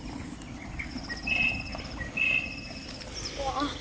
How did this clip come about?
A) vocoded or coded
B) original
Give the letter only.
B